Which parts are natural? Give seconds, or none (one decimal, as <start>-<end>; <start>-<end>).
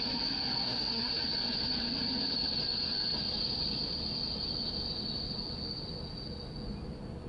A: 0.0-0.6; 1.1-7.3